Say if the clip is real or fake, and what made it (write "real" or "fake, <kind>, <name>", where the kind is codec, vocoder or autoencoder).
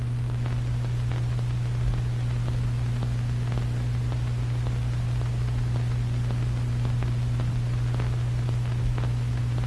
real